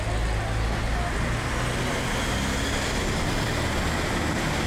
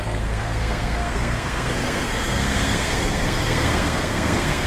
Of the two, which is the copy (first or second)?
second